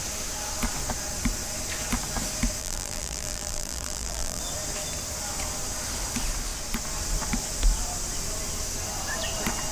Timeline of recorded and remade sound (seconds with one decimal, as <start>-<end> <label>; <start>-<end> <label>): 0.0-2.6 recorded; 2.6-4.4 remade; 4.4-9.7 recorded

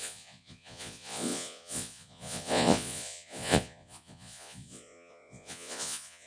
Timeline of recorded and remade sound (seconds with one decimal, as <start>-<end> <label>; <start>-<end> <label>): 0.0-6.3 remade